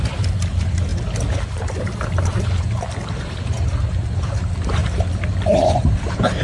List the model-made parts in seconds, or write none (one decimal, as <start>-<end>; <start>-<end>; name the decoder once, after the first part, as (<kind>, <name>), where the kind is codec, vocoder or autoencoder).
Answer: none